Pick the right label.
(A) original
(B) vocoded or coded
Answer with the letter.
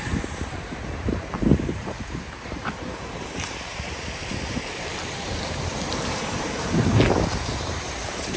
B